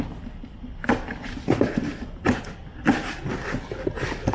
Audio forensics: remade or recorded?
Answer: recorded